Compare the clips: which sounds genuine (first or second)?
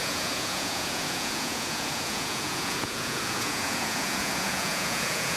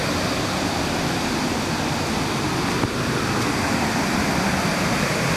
second